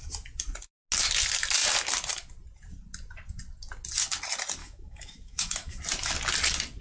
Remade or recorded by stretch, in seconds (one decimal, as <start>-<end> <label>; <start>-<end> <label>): 0.0-4.6 recorded; 4.6-5.8 remade; 5.8-6.8 recorded